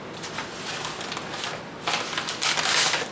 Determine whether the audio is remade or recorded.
recorded